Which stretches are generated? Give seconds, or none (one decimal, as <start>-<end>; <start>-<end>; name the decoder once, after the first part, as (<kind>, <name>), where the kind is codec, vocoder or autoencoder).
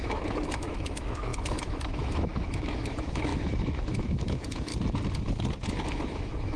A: 0.0-4.7 (autoencoder, DAC-VAE); 5.7-6.6